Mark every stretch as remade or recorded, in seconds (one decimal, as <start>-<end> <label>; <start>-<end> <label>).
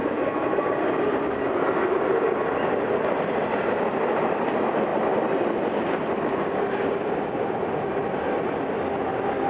0.0-9.5 recorded